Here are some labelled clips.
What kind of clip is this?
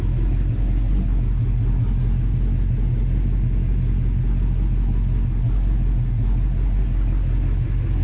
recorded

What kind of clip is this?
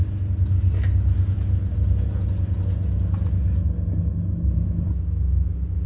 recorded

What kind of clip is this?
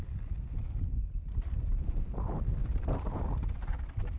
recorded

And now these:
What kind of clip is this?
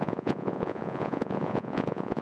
remade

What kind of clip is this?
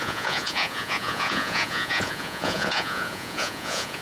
remade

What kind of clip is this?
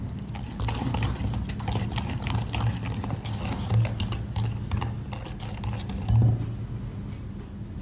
recorded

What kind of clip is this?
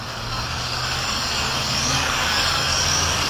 remade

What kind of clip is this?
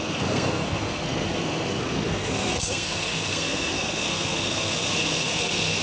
remade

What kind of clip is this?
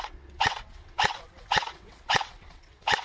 remade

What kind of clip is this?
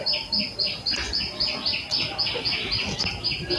recorded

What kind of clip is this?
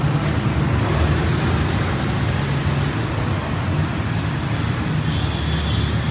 recorded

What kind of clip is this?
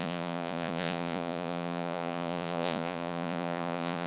remade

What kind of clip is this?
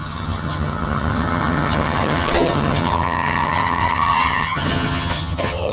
remade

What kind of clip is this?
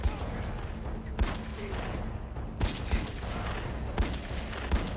recorded